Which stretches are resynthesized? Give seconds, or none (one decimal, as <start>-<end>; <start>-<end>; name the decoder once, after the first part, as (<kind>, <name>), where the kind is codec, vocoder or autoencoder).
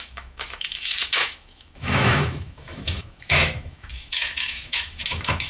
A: 0.0-5.5 (autoencoder, DAC-VAE)